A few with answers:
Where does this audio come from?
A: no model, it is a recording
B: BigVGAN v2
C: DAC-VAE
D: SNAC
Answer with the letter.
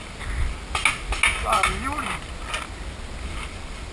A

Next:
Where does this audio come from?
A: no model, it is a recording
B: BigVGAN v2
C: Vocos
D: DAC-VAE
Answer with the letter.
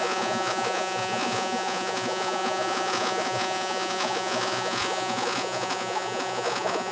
C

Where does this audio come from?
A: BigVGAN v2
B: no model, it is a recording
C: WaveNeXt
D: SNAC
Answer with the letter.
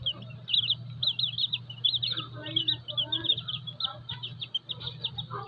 B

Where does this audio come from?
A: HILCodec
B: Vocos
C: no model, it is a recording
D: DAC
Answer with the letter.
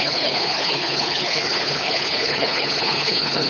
A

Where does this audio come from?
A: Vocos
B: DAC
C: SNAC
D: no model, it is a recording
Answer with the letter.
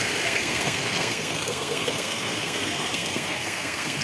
C